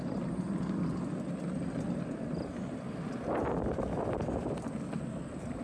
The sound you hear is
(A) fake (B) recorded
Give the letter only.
B